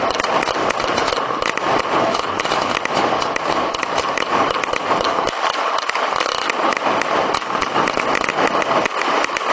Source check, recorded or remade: recorded